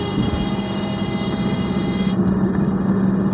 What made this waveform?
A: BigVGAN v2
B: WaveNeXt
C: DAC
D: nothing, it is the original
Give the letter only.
C